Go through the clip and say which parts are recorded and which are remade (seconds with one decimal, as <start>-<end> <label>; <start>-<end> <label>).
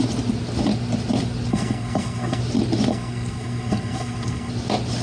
0.0-1.5 recorded; 1.5-2.4 remade; 2.4-2.9 recorded; 2.9-4.5 remade; 4.5-5.0 recorded